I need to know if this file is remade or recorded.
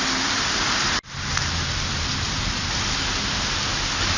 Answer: recorded